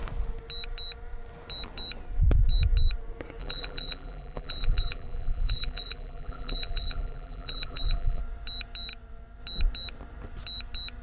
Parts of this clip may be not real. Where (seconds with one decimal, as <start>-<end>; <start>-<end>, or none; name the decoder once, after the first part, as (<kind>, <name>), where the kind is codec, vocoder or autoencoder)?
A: 3.4-8.2 (vocoder, BigVGAN v2)